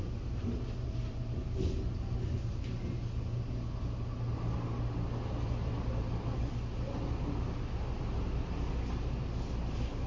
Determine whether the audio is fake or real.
real